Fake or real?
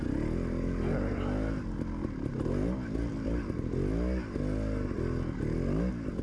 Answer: real